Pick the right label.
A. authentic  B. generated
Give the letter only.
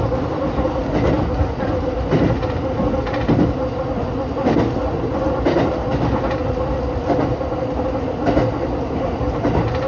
A